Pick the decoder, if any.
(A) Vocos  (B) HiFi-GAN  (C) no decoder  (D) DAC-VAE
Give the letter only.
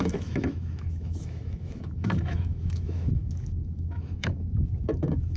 D